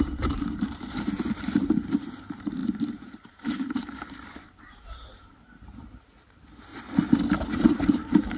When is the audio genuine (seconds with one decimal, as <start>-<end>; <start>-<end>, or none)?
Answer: 6.7-7.4